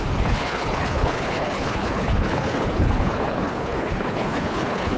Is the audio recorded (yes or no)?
no